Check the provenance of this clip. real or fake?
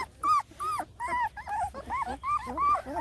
real